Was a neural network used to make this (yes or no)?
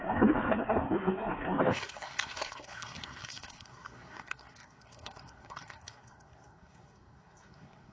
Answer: yes